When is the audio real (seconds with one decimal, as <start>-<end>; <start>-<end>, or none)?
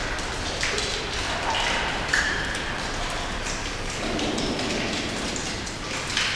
0.0-3.6; 4.2-6.4